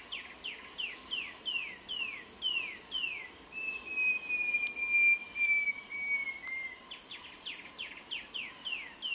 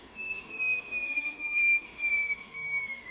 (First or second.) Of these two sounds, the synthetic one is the second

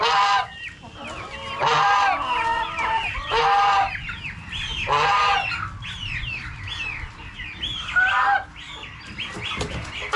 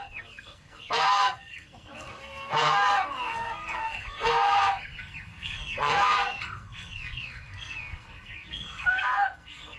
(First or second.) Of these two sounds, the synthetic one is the second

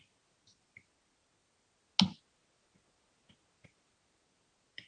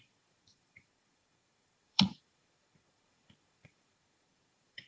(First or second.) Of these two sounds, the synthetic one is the second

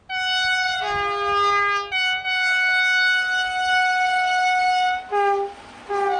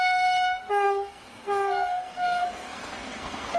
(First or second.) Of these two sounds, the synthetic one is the second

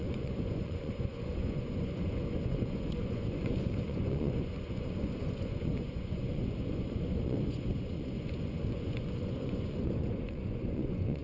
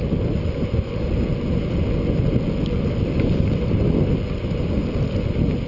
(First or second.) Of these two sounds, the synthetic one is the first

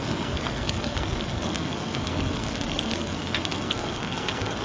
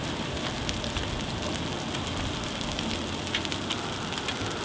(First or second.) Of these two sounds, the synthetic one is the first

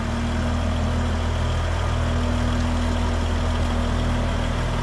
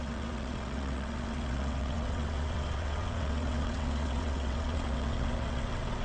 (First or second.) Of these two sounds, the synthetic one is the second